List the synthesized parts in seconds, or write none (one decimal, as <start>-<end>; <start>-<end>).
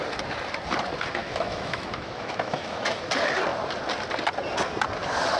1.2-3.0